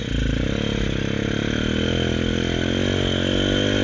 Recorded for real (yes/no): yes